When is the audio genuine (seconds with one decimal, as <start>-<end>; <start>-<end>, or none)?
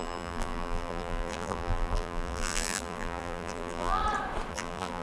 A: 4.0-4.5